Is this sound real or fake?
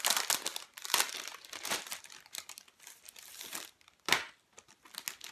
real